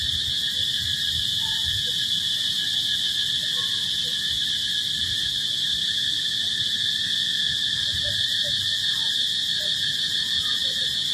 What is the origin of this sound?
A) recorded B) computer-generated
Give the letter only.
A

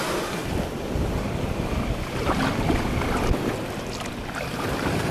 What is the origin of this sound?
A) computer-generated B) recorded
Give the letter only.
B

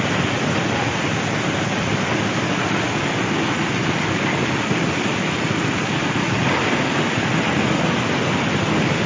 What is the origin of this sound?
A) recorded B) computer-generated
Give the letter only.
A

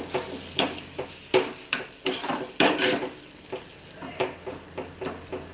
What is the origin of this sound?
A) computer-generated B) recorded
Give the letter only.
B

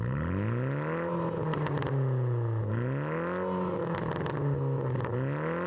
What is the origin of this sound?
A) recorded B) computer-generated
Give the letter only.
A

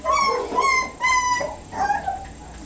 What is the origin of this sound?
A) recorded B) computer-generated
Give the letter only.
A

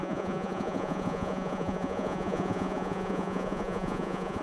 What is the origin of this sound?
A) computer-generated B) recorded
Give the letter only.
A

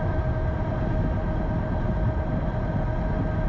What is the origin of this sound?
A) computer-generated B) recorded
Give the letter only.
B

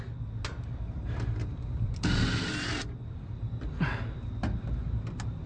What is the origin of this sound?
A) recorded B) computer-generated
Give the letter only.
A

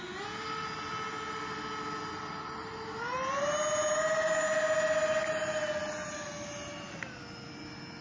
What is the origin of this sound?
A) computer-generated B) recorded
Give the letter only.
B